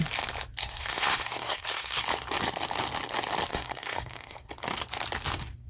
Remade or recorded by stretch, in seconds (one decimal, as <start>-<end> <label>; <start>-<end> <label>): 0.0-0.6 recorded; 0.6-2.0 remade; 2.0-3.5 recorded; 3.5-4.5 remade; 4.5-5.7 recorded